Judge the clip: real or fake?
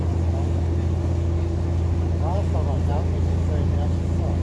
real